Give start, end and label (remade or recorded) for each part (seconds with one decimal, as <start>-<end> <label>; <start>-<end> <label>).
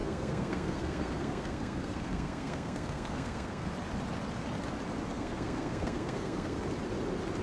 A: 0.0-3.7 remade; 3.7-5.1 recorded; 5.1-6.6 remade; 6.6-7.4 recorded